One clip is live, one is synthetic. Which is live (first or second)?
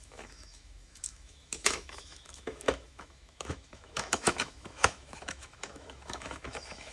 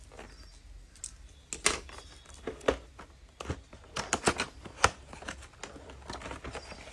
second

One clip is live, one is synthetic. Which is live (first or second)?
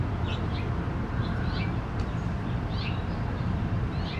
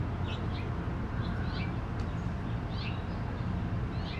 second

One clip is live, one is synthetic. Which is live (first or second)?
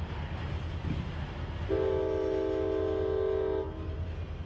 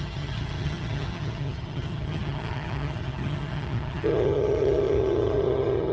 first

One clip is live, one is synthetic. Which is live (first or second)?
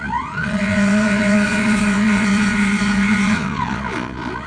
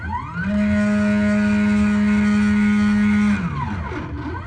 second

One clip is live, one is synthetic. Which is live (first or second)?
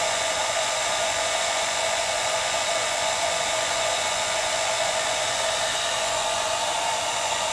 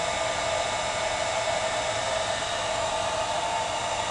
second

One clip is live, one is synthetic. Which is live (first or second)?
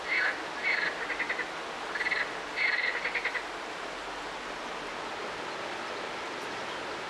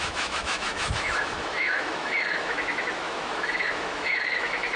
first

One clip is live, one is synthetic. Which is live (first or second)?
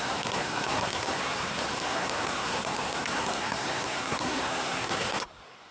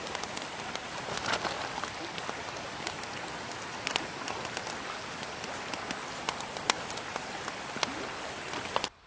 second